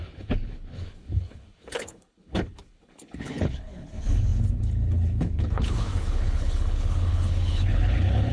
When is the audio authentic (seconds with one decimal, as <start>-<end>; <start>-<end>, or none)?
none